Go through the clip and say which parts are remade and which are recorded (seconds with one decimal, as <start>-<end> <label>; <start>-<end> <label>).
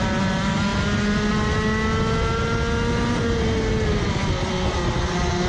0.0-5.5 recorded